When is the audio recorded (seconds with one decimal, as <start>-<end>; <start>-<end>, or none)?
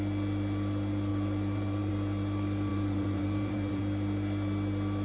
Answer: 0.0-1.1; 1.9-2.7; 3.8-5.0